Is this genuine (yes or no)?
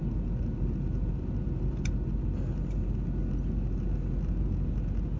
yes